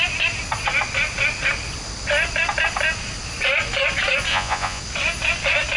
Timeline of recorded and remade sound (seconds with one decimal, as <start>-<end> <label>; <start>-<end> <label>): 0.0-4.3 recorded; 4.3-4.8 remade; 4.8-5.8 recorded